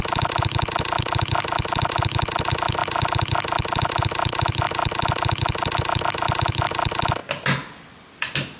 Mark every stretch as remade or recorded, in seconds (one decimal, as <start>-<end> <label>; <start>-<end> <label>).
0.0-8.6 recorded